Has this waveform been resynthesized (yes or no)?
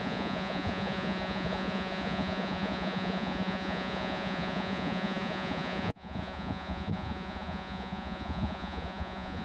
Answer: yes